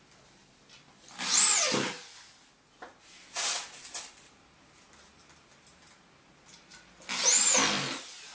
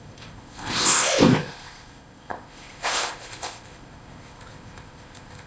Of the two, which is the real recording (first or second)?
first